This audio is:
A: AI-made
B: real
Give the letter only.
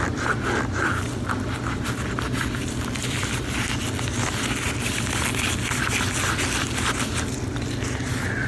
B